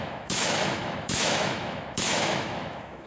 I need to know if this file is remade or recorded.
remade